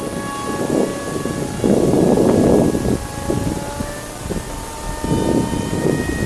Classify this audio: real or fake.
real